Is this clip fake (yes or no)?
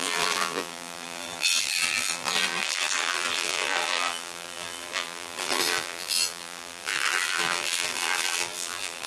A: yes